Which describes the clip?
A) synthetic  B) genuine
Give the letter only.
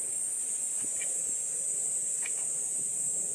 B